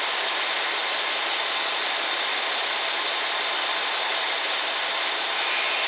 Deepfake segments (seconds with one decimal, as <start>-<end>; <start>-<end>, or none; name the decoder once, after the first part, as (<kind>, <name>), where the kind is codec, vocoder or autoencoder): none